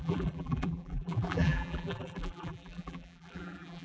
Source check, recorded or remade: remade